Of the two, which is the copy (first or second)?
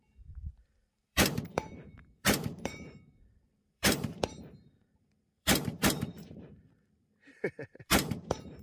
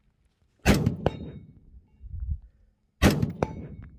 first